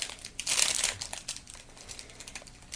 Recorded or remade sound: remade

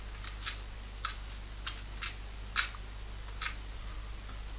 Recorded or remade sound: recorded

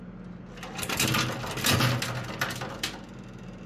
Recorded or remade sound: recorded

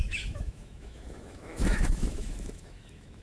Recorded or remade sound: remade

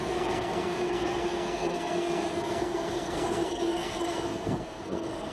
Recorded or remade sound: remade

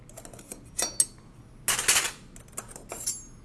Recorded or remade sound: recorded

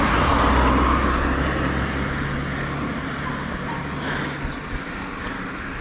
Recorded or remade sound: recorded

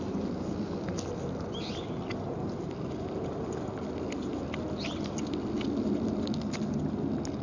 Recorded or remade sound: recorded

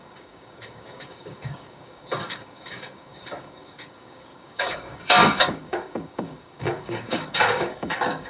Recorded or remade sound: remade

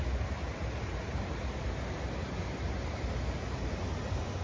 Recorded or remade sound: recorded